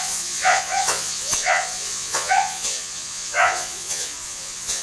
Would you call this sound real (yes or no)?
no